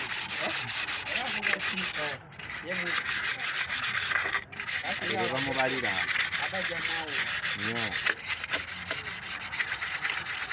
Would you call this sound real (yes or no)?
yes